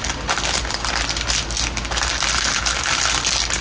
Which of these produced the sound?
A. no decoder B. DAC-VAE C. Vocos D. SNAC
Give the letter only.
A